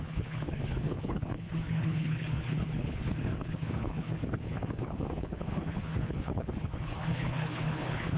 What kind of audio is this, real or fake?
fake